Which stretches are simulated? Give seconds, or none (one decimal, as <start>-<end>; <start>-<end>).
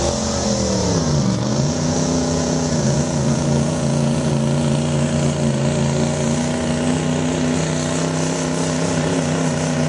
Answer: 1.5-4.3